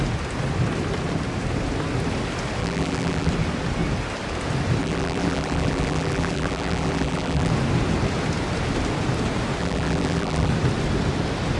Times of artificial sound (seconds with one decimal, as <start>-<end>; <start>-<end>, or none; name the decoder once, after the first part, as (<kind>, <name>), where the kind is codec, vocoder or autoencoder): 2.6-3.3 (vocoder, BigVGAN v2); 4.8-7.5; 9.6-10.5